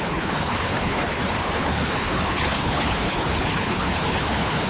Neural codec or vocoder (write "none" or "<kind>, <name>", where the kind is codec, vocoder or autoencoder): codec, HILCodec